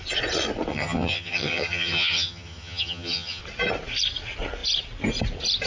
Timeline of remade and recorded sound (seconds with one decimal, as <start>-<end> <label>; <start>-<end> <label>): 0.0-0.7 recorded; 0.7-3.4 remade; 3.4-5.7 recorded